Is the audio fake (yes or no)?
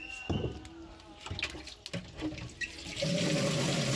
no